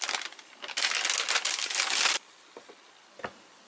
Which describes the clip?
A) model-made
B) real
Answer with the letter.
B